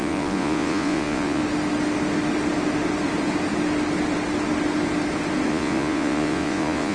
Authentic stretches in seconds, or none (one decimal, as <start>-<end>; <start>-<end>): 1.4-5.5